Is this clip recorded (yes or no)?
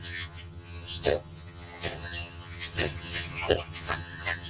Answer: no